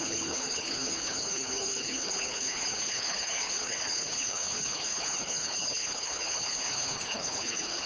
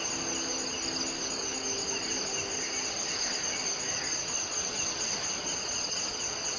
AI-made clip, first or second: first